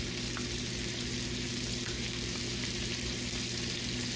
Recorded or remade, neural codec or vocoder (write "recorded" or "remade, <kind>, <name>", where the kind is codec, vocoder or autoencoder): recorded